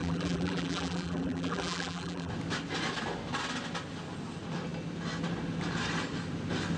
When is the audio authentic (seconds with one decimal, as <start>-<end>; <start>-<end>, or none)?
2.3-6.8